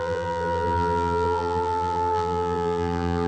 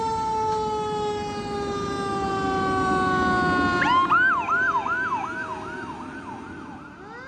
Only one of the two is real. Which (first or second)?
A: second